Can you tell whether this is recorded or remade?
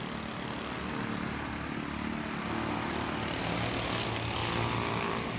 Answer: recorded